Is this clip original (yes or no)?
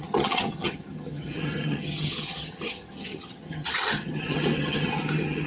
no